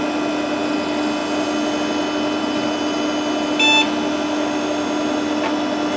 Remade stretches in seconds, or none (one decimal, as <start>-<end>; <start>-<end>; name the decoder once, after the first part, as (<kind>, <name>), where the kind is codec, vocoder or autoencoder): none

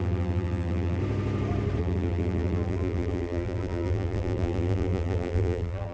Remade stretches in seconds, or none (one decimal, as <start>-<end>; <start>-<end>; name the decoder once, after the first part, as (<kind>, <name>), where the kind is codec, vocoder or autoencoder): 0.0-1.0 (vocoder, BigVGAN v2); 1.8-5.9

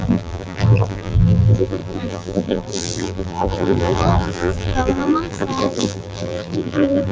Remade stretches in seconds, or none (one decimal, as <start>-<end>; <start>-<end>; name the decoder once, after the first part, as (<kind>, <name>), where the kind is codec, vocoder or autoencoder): 0.0-7.1 (vocoder, BigVGAN v2)

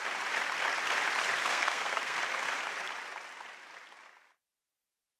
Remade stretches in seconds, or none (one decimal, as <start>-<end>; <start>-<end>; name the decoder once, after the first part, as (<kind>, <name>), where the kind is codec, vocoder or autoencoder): 1.4-2.2 (codec, SNAC)

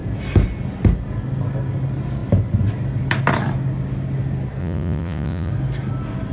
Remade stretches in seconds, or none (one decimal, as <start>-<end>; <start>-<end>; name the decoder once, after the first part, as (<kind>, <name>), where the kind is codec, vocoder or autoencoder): 4.6-5.5 (vocoder, Vocos)

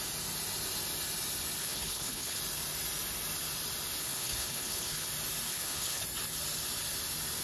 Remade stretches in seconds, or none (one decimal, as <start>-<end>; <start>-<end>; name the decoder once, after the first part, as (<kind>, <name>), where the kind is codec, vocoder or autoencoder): 1.6-2.4 (codec, HILCodec); 4.0-5.1; 5.5-6.0

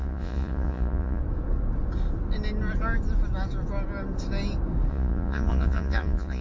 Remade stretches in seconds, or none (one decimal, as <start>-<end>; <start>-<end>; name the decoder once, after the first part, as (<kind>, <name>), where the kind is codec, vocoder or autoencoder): 0.0-1.2 (vocoder, Vocos); 4.9-6.4